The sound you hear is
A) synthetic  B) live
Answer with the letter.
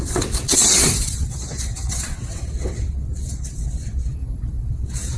A